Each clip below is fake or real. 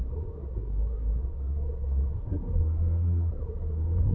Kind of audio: fake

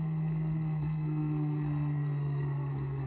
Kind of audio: fake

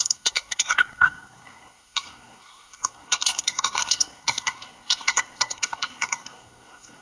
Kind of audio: fake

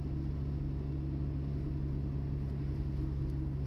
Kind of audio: real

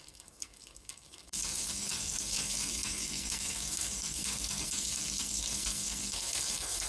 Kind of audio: fake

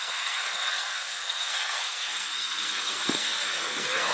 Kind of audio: fake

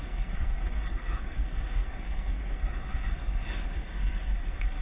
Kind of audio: fake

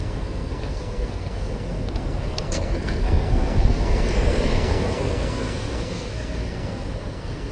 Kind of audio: fake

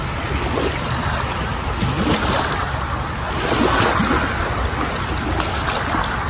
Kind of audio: real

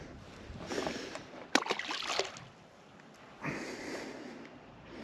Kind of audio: real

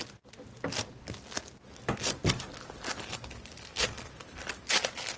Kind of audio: real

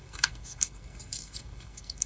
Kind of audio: fake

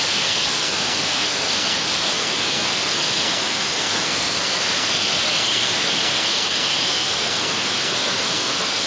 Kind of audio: fake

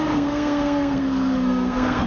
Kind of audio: fake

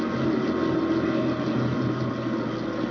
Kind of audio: real